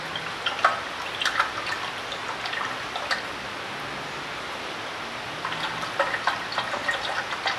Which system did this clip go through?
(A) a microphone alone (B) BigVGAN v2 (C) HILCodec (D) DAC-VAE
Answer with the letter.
A